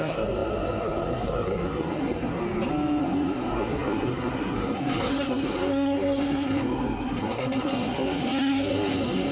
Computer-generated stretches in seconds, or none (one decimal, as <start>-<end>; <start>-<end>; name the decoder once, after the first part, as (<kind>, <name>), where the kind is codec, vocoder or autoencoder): 0.0-2.4 (codec, SNAC); 3.0-9.3